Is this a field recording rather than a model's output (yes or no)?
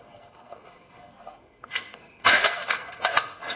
no